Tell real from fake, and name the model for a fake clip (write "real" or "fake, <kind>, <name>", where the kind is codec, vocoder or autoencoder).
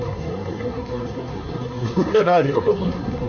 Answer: fake, codec, SNAC